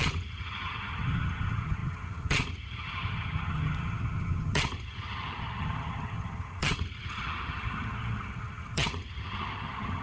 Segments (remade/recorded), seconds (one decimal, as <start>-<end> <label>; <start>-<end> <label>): 0.0-10.0 remade